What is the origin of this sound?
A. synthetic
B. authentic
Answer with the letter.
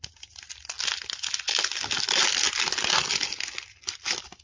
B